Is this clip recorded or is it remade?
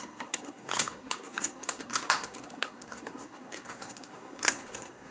remade